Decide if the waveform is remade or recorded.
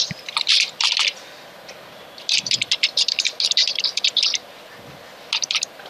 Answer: recorded